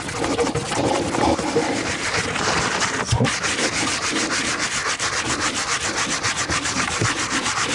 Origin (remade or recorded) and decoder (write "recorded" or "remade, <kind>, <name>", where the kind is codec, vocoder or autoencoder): recorded